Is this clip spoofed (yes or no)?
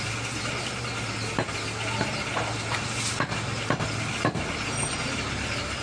no